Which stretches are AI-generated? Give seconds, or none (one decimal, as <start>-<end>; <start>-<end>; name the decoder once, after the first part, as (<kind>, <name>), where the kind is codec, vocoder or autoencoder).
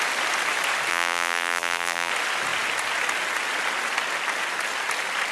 0.9-2.1 (vocoder, BigVGAN v2)